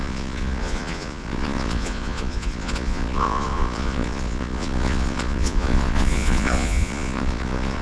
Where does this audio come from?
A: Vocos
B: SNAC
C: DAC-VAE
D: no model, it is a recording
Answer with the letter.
A